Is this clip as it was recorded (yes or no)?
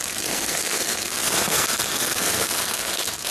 no